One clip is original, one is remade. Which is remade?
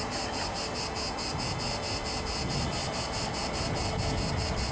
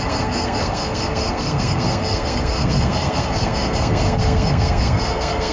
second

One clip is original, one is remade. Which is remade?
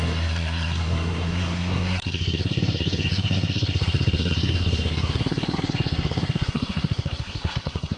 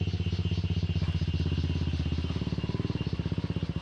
first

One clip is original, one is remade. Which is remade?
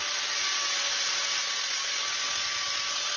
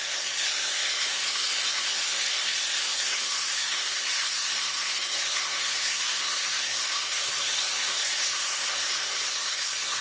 second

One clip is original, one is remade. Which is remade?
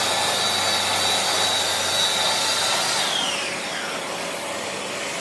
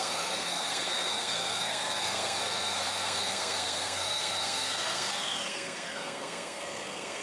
second